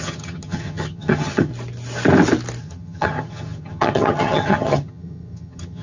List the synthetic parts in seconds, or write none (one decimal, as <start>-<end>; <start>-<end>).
0.0-1.5; 2.6-5.8